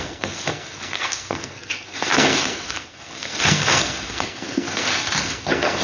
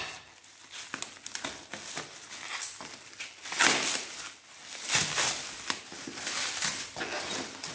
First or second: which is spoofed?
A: first